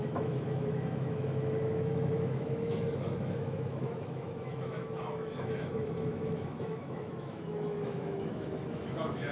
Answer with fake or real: fake